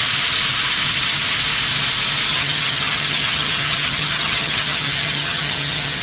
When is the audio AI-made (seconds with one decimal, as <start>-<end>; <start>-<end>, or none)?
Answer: 2.3-6.0